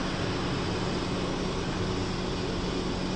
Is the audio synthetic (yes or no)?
no